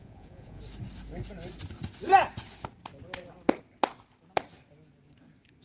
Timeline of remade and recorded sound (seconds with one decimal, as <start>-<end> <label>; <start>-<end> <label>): 0.0-0.6 remade; 0.6-5.6 recorded